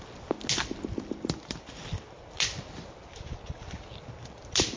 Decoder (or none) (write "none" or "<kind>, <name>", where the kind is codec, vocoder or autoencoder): none